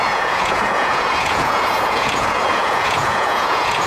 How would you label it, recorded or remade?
remade